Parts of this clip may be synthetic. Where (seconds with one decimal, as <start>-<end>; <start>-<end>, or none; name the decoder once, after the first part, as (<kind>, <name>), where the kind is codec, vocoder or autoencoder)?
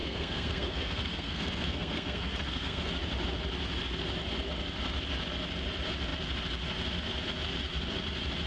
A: 0.0-2.9 (codec, SNAC)